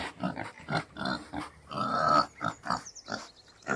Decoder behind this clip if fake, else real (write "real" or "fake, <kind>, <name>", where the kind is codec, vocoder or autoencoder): real